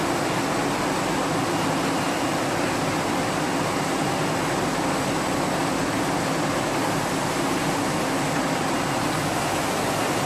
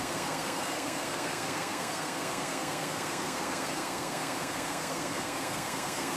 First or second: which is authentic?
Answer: first